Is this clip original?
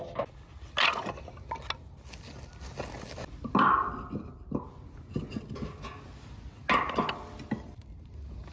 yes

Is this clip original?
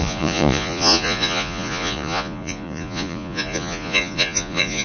no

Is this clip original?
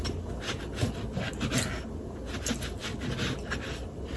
yes